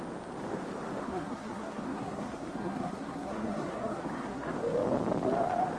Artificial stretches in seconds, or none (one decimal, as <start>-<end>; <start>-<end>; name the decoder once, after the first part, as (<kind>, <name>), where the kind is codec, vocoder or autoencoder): 1.0-4.5 (codec, SNAC)